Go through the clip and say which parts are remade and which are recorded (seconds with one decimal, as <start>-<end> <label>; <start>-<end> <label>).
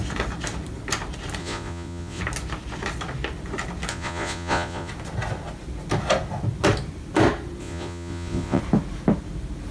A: 0.0-1.4 recorded; 1.4-2.2 remade; 2.2-3.9 recorded; 3.9-4.9 remade; 4.9-7.6 recorded; 7.6-8.6 remade; 8.6-9.7 recorded